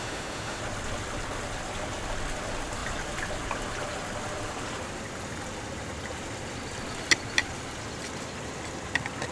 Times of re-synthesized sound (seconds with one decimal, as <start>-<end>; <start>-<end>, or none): 0.0-0.6